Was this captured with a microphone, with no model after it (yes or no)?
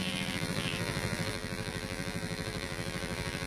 no